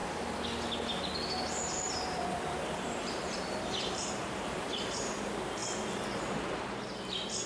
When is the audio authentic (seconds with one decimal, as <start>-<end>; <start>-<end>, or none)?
0.0-1.9